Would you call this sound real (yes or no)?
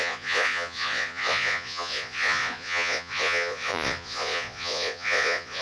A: no